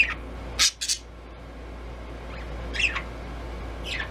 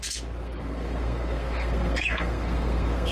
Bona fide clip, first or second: first